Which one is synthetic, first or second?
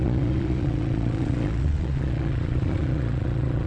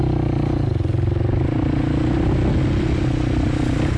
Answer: first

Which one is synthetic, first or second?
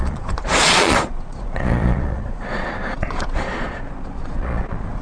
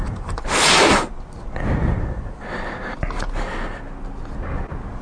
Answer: first